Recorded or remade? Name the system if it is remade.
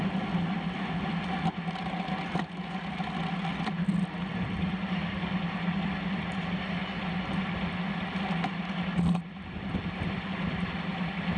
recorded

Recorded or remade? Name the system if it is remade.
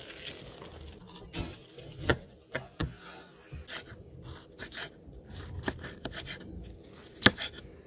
recorded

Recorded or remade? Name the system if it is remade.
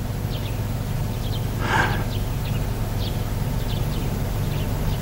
recorded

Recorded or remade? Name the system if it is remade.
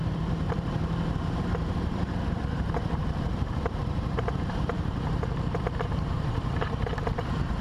remade, vocoder, BigVGAN v2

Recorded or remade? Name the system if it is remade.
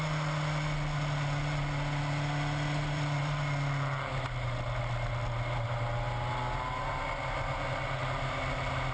recorded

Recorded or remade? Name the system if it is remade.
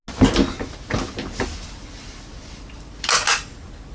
recorded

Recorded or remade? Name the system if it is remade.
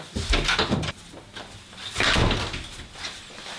recorded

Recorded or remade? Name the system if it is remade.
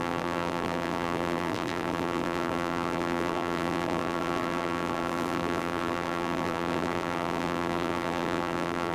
remade, vocoder, BigVGAN v2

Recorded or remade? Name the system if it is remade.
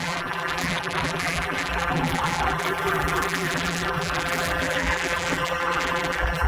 remade, vocoder, BigVGAN v2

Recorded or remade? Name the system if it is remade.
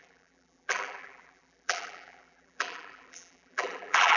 remade, vocoder, BigVGAN v2